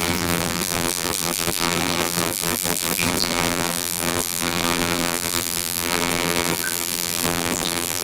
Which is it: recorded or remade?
remade